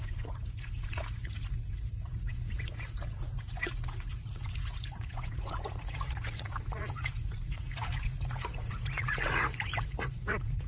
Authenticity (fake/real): fake